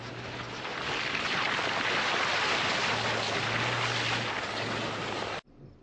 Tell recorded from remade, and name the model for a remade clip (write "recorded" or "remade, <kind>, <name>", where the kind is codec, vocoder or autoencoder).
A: recorded